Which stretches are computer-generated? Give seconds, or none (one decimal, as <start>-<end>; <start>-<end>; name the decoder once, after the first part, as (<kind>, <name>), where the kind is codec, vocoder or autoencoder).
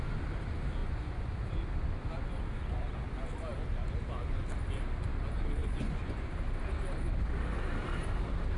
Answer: 0.8-1.4 (vocoder, Vocos); 5.6-6.3